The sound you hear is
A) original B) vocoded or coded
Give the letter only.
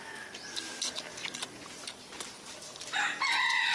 A